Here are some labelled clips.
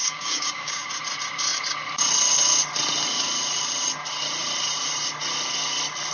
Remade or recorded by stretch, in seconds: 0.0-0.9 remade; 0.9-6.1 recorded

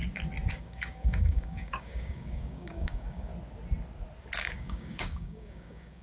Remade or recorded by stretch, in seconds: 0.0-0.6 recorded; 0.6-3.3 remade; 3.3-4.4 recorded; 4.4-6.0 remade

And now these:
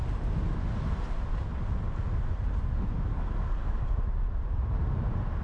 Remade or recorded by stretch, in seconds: 0.0-3.1 recorded; 3.1-3.8 remade; 3.8-5.4 recorded

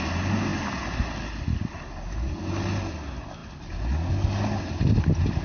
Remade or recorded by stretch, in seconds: 0.0-5.4 recorded

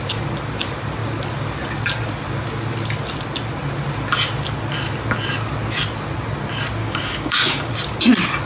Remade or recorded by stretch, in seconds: 0.0-6.8 recorded; 6.8-7.7 remade; 7.7-8.5 recorded